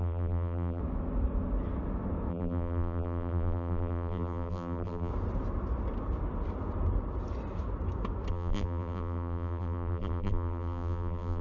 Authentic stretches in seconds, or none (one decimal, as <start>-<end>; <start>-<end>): 0.8-2.3; 5.1-8.3